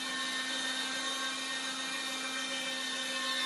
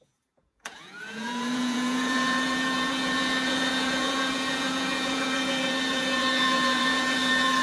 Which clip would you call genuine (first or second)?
first